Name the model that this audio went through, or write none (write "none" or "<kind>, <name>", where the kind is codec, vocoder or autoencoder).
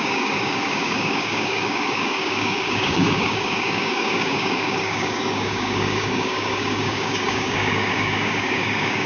codec, DAC